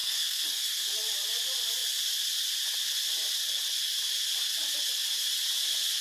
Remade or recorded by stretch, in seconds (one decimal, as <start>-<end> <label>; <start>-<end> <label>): 0.0-0.9 remade; 0.9-6.0 recorded